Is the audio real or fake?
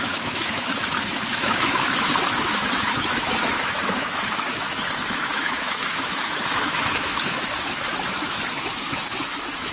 fake